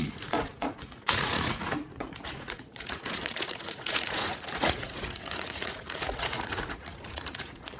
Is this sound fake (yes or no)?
yes